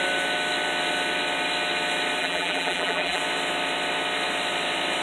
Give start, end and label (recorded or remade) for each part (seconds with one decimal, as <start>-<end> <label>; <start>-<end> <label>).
0.0-2.2 recorded; 2.2-3.2 remade; 3.2-5.0 recorded